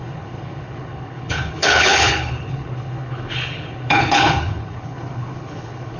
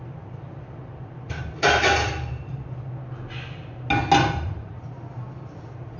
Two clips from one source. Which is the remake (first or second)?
first